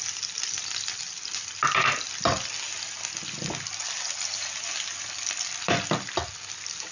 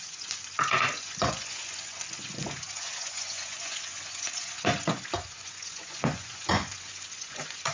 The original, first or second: first